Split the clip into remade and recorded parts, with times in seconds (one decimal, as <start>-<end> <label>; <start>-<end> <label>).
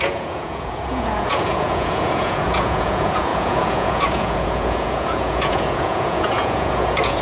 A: 0.0-7.2 remade